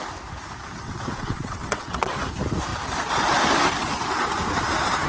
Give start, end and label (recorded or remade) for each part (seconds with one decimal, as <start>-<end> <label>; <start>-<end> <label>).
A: 0.0-0.8 recorded; 0.8-2.2 remade; 2.2-5.1 recorded